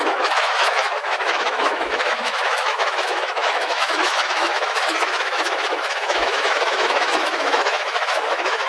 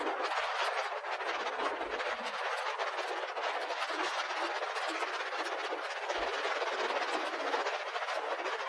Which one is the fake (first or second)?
first